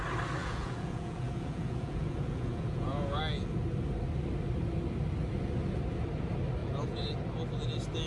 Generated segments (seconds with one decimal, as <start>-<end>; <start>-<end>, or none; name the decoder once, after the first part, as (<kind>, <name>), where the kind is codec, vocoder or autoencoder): 0.4-3.2 (vocoder, Vocos); 6.6-7.1